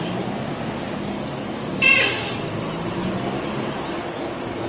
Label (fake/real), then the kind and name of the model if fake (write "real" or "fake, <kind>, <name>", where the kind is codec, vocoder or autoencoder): real